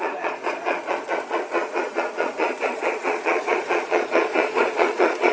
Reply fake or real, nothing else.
fake